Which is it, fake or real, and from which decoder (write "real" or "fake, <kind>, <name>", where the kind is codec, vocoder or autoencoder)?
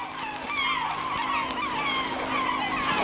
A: real